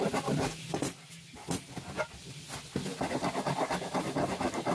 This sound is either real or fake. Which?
real